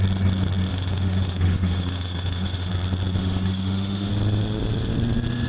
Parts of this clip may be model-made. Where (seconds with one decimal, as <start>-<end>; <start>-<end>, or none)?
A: 0.7-2.7; 3.2-4.1